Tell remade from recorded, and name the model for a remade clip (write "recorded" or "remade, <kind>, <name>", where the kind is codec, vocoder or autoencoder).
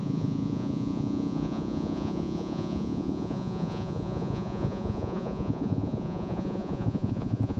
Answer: remade, vocoder, Vocos